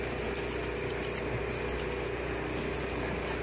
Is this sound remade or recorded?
recorded